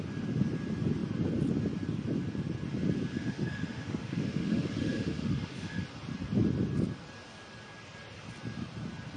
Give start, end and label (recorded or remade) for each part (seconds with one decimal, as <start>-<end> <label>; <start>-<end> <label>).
0.0-3.1 recorded; 3.1-5.8 remade; 5.8-9.2 recorded

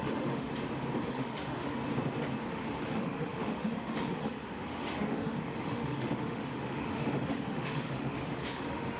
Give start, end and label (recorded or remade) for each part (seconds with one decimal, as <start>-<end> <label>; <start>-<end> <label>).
0.0-0.5 remade; 0.5-1.1 recorded; 1.1-1.8 remade; 1.8-2.5 recorded; 2.5-9.0 remade

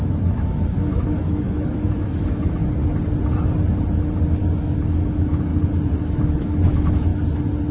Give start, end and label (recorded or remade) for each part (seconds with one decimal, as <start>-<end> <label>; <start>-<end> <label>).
0.0-2.6 remade; 2.6-4.6 recorded; 4.6-5.5 remade; 5.5-6.0 recorded; 6.0-7.1 remade; 7.1-7.7 recorded

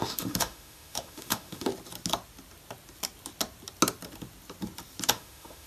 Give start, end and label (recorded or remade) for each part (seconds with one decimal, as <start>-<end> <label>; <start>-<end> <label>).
0.0-1.7 remade; 1.7-5.1 recorded; 5.1-5.7 remade

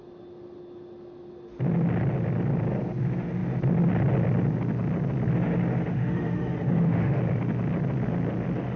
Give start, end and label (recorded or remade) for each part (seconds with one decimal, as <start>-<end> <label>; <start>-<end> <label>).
0.0-5.9 recorded; 5.9-7.2 remade; 7.2-8.8 recorded

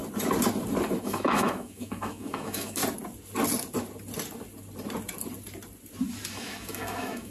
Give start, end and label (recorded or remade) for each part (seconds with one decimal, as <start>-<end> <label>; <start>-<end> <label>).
0.0-1.0 recorded; 1.0-2.8 remade; 2.8-6.3 recorded; 6.3-7.3 remade